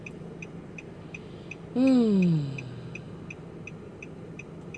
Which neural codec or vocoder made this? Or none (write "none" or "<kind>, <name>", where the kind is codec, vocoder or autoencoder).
none